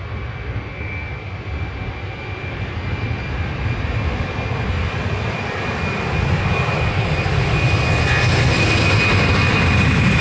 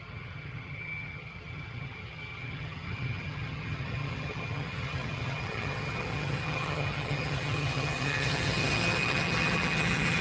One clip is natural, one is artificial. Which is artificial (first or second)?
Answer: second